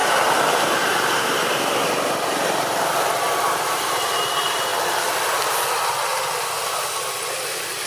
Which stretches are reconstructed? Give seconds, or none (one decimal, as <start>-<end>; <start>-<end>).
3.4-4.7; 5.4-6.1; 6.6-7.9